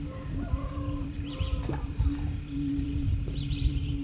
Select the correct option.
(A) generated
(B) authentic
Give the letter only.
A